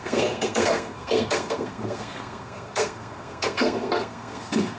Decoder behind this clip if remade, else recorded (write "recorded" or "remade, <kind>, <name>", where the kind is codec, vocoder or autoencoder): remade, codec, SNAC